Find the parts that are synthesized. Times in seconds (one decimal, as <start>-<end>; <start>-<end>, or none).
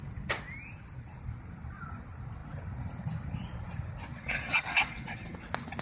4.1-5.3